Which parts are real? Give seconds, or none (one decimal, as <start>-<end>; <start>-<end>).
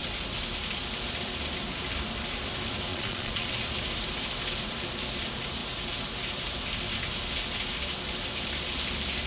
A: 0.0-2.9; 3.5-9.3